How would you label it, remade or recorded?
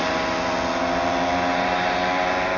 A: recorded